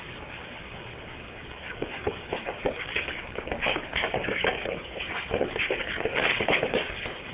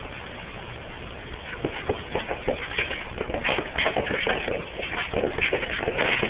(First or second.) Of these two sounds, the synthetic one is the first